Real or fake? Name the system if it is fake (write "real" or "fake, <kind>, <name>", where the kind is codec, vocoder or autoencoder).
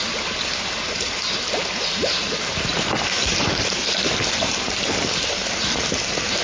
real